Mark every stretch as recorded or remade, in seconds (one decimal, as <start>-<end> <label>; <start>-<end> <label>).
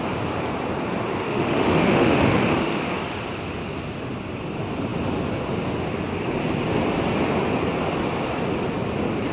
0.0-1.1 recorded; 1.1-2.9 remade; 2.9-9.3 recorded